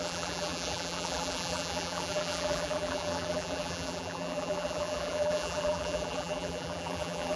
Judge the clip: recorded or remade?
remade